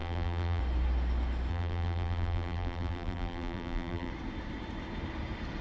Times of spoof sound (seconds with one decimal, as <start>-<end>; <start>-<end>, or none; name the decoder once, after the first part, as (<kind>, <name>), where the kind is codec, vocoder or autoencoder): 0.0-0.6 (vocoder, BigVGAN v2); 1.5-4.1